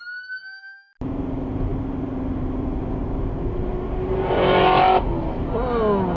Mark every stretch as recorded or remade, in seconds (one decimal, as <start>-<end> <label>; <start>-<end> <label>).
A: 0.0-6.2 recorded

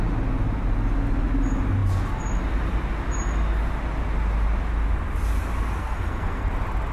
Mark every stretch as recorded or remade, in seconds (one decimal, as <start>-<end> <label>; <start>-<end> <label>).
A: 0.0-5.8 recorded; 5.8-6.5 remade; 6.5-6.9 recorded